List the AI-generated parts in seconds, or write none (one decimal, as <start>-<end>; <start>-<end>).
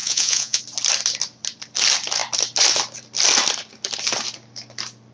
0.0-0.6